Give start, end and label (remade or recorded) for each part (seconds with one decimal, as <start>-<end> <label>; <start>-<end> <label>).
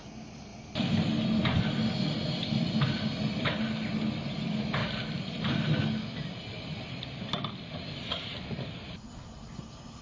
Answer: 0.0-10.0 recorded